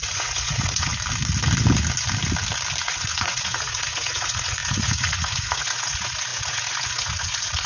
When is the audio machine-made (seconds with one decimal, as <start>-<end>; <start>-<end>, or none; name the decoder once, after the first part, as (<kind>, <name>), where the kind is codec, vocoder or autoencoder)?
0.0-0.9 (vocoder, Vocos); 2.8-7.7